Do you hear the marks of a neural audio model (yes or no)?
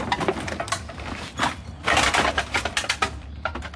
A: no